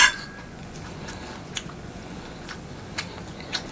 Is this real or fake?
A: fake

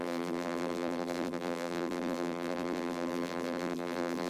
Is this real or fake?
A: fake